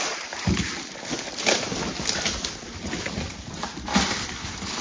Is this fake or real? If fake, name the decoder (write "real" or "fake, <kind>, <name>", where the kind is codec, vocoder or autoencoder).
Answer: real